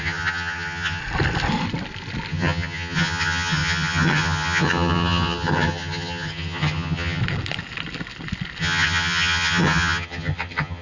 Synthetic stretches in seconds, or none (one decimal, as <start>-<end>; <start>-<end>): 0.0-1.0; 2.3-7.2; 8.6-10.8